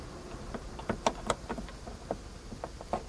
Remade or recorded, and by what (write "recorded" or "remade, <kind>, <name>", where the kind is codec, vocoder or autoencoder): recorded